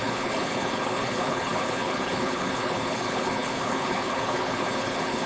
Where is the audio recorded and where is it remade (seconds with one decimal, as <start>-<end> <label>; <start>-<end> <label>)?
0.0-5.3 remade

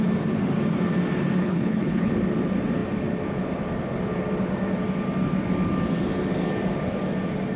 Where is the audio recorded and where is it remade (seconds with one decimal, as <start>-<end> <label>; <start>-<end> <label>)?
0.0-1.4 recorded; 1.4-2.1 remade; 2.1-7.6 recorded

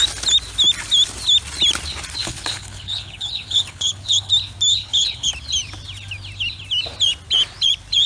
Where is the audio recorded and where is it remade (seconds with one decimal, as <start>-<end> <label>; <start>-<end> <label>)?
0.0-2.2 recorded; 2.2-4.3 remade; 4.3-4.7 recorded; 4.7-5.3 remade; 5.3-8.1 recorded

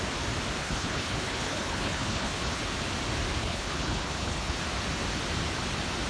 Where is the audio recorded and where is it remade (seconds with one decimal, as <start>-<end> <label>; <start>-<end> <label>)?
0.0-0.6 recorded; 0.6-2.6 remade; 2.6-3.4 recorded; 3.4-4.6 remade; 4.6-6.1 recorded